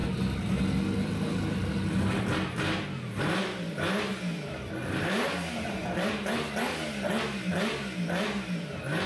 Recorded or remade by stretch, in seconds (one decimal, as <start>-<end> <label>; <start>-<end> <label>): 0.0-9.1 recorded